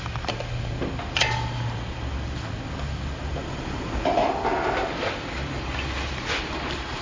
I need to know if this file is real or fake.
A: real